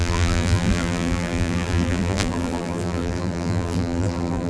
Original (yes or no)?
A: no